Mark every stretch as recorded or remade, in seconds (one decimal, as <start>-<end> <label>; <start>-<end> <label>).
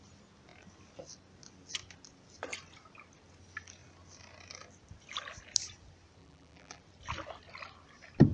0.0-6.2 recorded; 6.2-6.8 remade; 6.8-8.3 recorded